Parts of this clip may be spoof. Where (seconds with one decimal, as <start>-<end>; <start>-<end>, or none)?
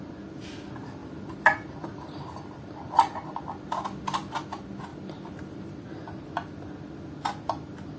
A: 1.0-3.4; 4.9-5.9